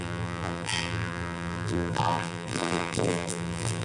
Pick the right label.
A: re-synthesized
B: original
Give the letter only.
A